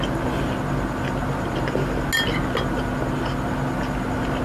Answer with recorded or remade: recorded